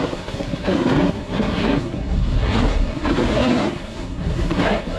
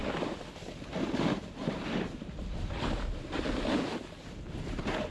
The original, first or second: second